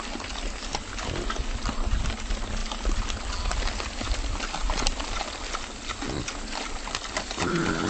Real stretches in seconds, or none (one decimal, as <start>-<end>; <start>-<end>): 0.0-7.9